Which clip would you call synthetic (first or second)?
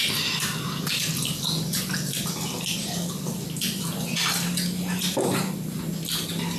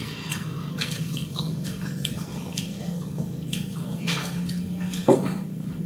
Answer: second